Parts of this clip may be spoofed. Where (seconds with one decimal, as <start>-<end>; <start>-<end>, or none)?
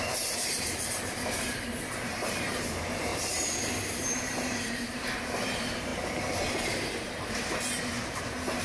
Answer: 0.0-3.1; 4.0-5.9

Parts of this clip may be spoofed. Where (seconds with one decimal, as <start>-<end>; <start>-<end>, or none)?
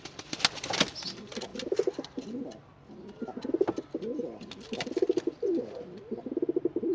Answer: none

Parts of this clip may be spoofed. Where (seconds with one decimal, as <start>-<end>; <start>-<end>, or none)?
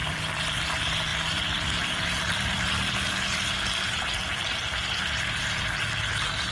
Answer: 0.0-0.6; 1.1-5.0